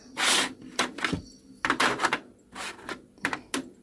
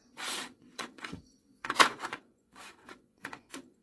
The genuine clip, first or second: first